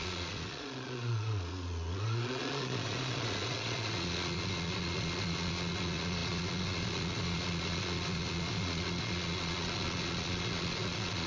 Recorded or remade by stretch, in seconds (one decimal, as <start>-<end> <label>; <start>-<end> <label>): 0.0-11.3 remade